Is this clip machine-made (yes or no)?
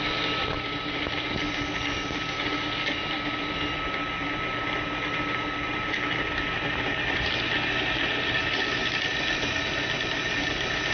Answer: no